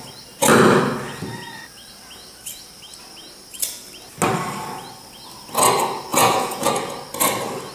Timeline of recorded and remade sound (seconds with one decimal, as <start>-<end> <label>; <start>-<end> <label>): 0.0-6.1 recorded; 6.1-6.7 remade; 6.7-7.7 recorded